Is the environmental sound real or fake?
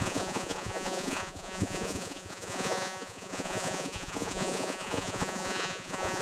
fake